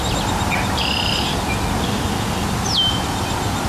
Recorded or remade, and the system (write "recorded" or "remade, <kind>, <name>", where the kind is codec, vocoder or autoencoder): recorded